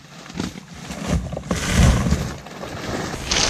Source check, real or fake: real